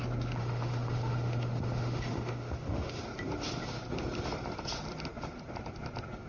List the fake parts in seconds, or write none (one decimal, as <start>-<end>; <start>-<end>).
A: 0.4-3.0